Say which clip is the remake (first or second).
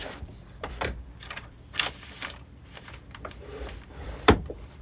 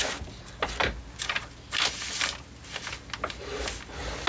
first